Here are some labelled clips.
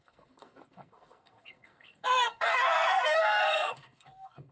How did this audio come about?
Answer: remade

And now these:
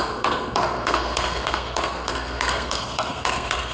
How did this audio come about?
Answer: remade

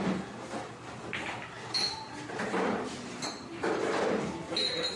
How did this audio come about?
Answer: recorded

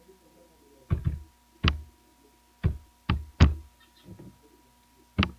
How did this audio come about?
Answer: recorded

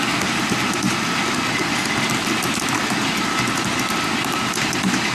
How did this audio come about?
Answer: recorded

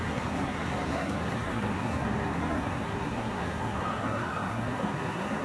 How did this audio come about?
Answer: remade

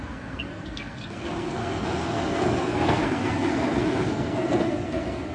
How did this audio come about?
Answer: remade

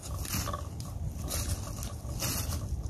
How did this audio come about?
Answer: recorded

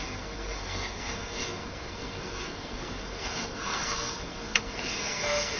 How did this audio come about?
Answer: remade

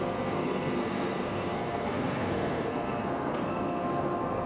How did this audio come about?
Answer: remade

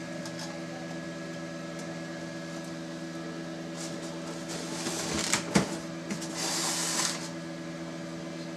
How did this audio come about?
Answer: recorded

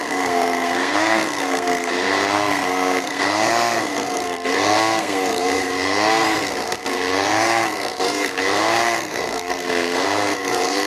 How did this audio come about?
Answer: remade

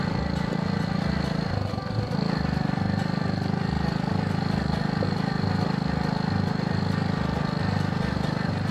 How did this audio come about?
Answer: recorded